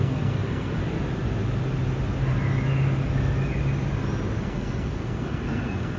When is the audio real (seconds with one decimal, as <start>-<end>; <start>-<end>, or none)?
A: 0.8-4.4